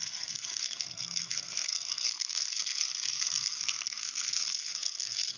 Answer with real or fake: fake